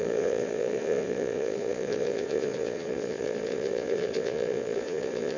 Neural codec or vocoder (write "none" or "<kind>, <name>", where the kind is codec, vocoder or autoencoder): vocoder, Vocos